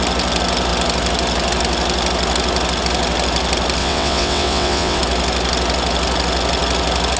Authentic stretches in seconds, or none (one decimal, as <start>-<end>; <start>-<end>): 0.0-3.8; 5.0-7.2